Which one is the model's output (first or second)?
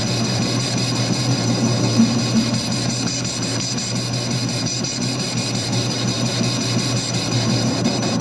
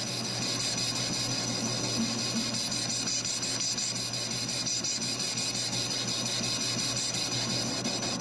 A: first